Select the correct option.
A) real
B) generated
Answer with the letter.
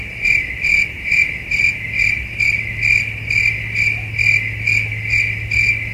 A